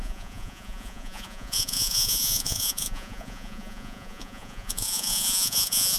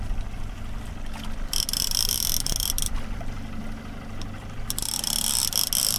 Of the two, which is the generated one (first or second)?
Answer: first